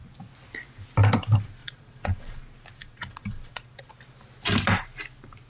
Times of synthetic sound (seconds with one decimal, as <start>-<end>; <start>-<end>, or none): 1.6-2.4; 2.8-3.9